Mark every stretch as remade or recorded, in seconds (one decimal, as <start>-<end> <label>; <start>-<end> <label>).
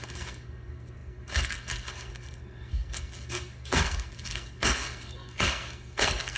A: 0.0-6.4 remade